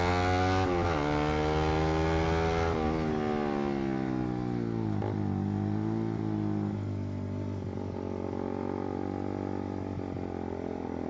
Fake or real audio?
real